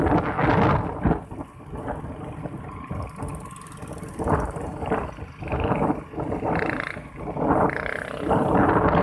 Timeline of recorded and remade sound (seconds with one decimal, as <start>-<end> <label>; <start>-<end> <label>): 0.0-9.0 recorded